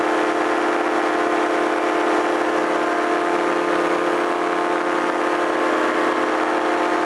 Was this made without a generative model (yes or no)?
yes